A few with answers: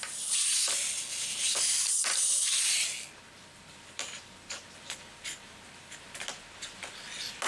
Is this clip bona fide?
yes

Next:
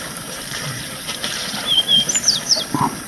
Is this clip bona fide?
no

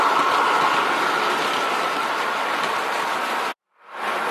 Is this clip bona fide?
yes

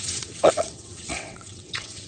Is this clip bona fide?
no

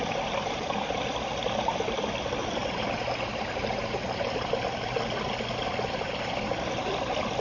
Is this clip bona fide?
yes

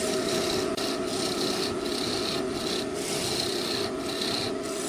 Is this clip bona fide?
yes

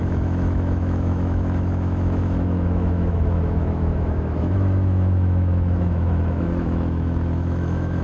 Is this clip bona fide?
no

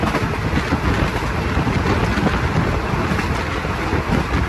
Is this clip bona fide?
yes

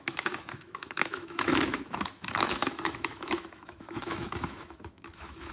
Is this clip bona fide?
no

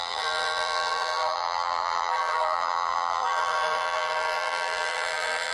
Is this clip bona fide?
no